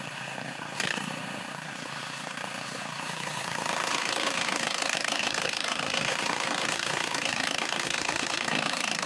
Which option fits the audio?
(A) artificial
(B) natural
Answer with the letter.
A